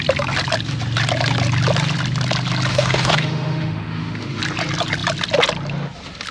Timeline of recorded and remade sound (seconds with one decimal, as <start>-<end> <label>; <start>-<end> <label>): 0.0-2.7 recorded; 2.7-4.4 remade; 4.4-6.3 recorded